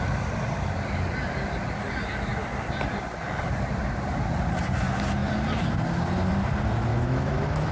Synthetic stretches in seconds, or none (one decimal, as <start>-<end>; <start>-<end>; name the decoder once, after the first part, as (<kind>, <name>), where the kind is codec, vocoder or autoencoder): 6.9-7.7 (autoencoder, DAC-VAE)